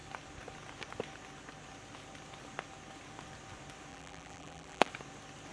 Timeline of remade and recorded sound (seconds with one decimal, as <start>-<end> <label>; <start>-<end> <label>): 0.0-3.9 recorded; 3.9-4.9 remade; 4.9-5.5 recorded